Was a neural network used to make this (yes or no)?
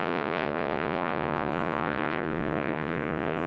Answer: yes